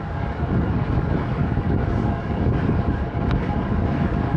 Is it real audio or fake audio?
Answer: fake